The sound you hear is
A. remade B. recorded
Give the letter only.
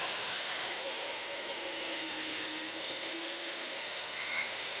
A